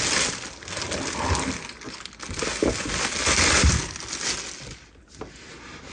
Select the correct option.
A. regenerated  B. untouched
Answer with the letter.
B